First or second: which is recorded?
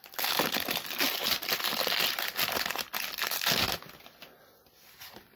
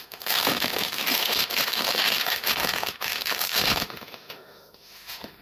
first